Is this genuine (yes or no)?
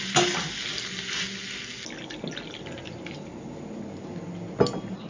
yes